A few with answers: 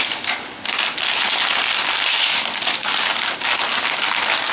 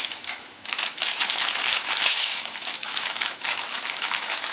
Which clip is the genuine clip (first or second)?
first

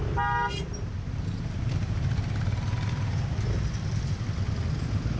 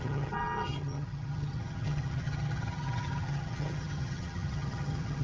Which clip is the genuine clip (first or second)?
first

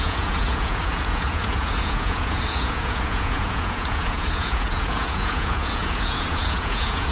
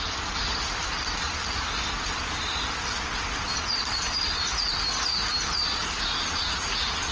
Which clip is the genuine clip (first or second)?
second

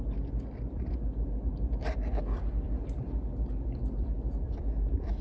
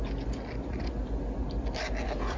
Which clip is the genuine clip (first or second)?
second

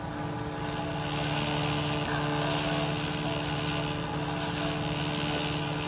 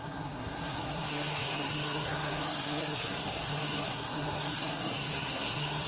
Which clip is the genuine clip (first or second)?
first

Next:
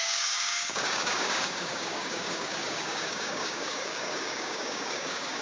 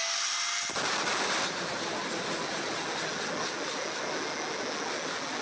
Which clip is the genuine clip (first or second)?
second